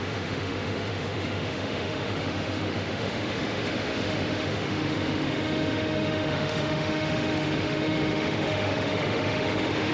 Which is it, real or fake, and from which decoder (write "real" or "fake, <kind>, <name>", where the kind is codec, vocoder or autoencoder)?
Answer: fake, autoencoder, DAC-VAE